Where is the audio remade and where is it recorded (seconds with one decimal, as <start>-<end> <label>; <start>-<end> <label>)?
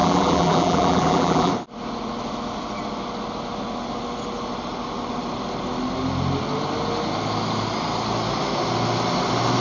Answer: 0.0-1.5 remade; 1.5-9.6 recorded